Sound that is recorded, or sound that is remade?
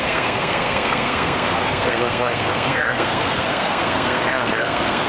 remade